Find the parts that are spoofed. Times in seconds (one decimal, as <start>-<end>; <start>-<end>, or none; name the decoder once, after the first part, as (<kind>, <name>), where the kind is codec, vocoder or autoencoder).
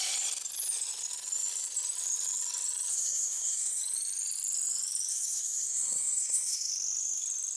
2.9-3.8 (codec, SNAC); 5.1-6.7